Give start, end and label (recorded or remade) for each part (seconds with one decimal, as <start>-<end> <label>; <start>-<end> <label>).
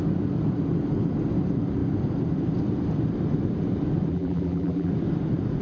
0.0-4.1 recorded; 4.1-4.9 remade; 4.9-5.6 recorded